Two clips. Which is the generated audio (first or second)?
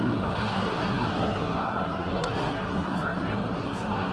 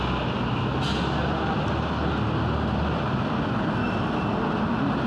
first